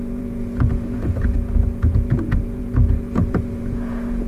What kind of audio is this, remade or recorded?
remade